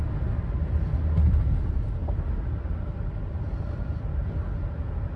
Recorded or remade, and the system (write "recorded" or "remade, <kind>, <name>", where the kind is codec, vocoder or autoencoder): recorded